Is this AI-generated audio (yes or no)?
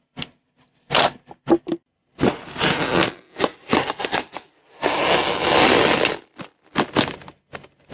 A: no